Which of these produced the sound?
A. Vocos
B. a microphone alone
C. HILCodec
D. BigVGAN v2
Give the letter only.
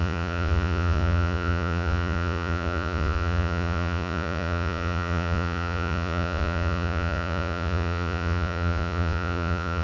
A